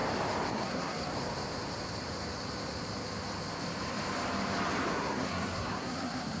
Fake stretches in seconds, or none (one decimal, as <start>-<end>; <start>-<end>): 0.5-1.1; 4.9-6.4